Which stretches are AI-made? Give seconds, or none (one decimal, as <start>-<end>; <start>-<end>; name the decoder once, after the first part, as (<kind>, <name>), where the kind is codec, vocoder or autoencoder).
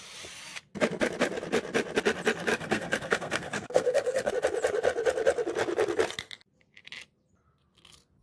2.5-4.3 (codec, SNAC)